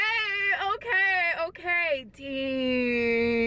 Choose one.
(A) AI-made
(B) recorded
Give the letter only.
B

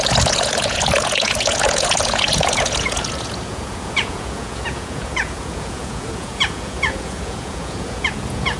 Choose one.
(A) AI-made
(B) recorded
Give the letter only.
A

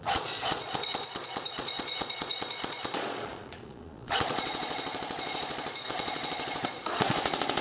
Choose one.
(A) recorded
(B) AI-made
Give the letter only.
B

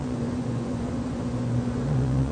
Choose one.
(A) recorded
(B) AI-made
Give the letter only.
B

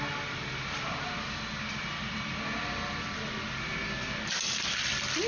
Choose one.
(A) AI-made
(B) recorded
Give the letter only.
B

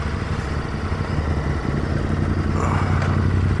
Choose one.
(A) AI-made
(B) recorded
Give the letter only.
B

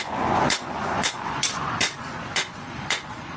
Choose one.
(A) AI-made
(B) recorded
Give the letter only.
A